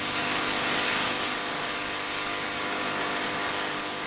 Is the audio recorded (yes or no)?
no